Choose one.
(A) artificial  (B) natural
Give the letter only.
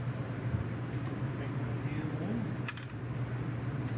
A